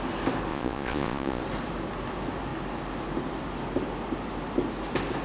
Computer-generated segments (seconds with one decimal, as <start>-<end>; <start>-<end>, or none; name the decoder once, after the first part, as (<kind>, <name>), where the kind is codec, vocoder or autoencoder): 0.5-1.4 (vocoder, Vocos)